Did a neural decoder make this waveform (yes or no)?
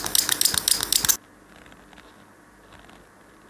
no